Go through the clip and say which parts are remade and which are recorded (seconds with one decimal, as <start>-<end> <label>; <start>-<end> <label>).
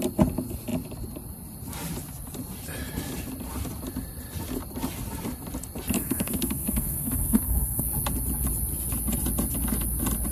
0.0-6.0 recorded; 6.0-7.8 remade; 7.8-10.3 recorded